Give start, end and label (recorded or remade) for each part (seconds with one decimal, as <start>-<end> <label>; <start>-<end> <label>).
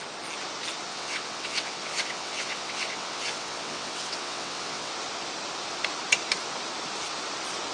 0.0-0.9 recorded; 0.9-4.9 remade; 4.9-7.7 recorded